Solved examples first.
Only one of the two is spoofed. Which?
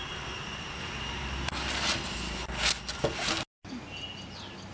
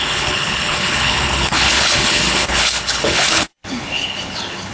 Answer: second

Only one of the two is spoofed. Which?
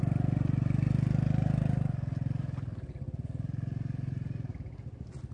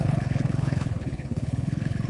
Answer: second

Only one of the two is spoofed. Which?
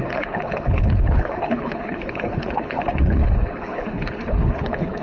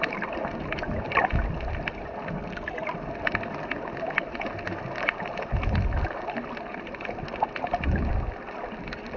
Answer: first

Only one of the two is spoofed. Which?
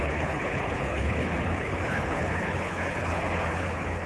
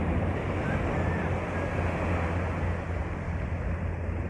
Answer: first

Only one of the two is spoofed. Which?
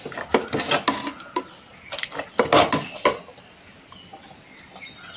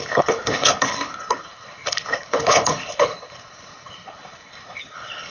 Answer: second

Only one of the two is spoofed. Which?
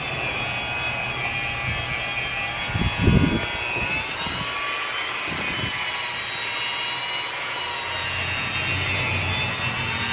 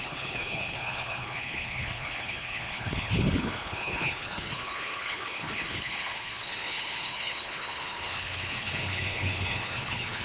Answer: second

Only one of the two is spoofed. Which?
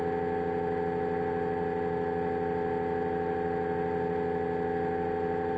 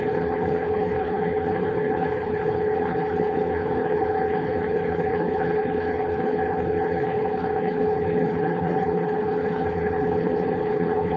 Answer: second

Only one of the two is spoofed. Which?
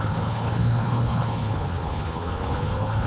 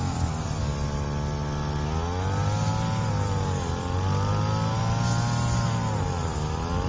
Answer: first